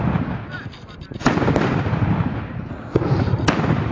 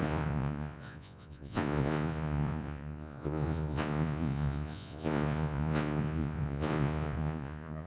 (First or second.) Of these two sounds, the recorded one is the first